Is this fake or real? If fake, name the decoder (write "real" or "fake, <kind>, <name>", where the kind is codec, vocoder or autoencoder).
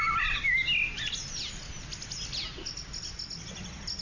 real